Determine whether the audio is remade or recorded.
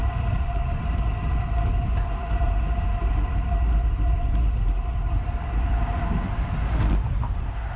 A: recorded